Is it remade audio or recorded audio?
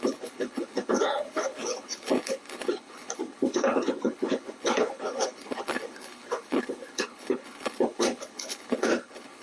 remade